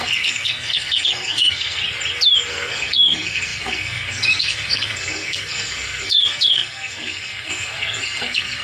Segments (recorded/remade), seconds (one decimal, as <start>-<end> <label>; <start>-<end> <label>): 0.0-1.8 remade; 1.8-2.5 recorded; 2.5-8.6 remade

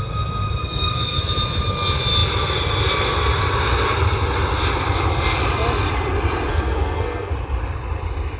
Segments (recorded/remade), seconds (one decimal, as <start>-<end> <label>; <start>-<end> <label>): 0.0-0.6 recorded; 0.6-1.2 remade; 1.2-6.5 recorded; 6.5-7.3 remade; 7.3-8.4 recorded

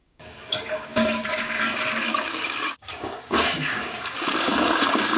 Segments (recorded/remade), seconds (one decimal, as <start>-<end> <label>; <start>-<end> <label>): 0.0-5.2 remade

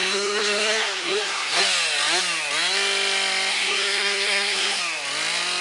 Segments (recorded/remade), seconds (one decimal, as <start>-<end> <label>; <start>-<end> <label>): 0.0-1.6 remade; 1.6-3.5 recorded; 3.5-4.8 remade; 4.8-5.6 recorded

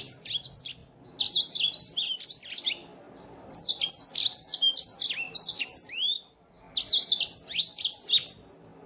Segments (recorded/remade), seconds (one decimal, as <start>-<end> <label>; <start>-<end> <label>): 0.0-8.9 recorded

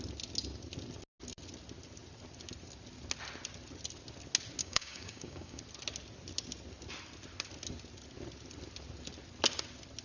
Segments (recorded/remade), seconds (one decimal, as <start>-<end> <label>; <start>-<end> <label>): 0.0-4.6 recorded; 4.6-5.6 remade; 5.6-10.0 recorded